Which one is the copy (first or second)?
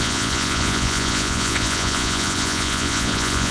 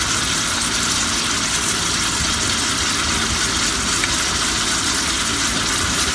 first